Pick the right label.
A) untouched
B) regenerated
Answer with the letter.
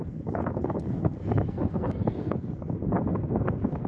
B